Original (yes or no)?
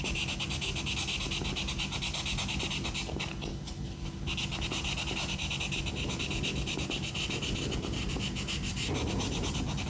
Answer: yes